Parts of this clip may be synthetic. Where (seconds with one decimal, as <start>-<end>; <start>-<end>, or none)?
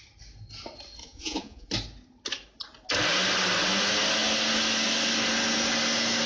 1.0-1.7